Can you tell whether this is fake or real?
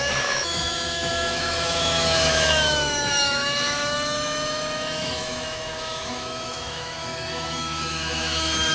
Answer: fake